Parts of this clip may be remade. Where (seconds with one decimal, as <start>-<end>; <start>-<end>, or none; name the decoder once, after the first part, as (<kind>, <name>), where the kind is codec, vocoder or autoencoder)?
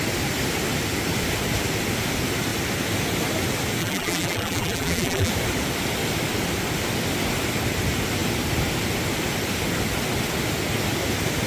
3.8-5.3 (vocoder, BigVGAN v2)